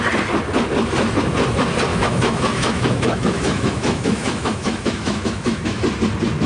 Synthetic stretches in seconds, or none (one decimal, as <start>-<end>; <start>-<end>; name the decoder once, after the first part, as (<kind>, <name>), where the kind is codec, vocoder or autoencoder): 1.9-5.8 (autoencoder, DAC-VAE)

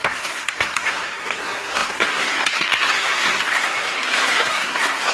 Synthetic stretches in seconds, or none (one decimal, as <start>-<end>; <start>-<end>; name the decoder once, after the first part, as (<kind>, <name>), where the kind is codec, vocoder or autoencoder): 0.0-5.1 (codec, SNAC)